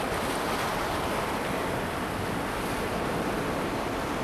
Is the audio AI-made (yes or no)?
no